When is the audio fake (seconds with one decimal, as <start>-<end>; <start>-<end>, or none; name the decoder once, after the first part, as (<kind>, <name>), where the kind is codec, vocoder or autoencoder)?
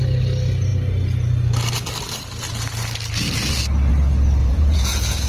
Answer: 4.4-5.3 (vocoder, Vocos)